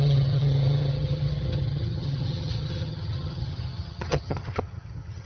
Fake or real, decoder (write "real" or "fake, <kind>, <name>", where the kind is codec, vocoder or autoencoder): fake, vocoder, HiFi-GAN